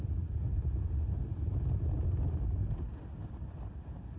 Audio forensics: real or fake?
real